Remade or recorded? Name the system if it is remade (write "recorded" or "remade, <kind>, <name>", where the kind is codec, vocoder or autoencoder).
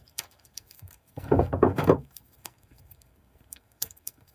remade, codec, SNAC